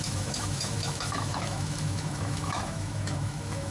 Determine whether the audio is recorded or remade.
remade